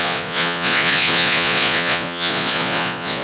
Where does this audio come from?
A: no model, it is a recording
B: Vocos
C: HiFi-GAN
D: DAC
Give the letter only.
B